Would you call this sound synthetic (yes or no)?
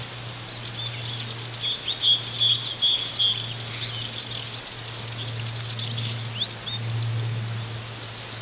no